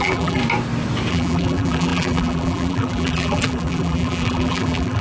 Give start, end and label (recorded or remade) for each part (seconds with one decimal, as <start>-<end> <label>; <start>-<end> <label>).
0.0-0.4 remade; 0.4-1.1 recorded; 1.1-5.0 remade